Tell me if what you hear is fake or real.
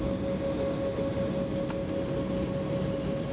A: real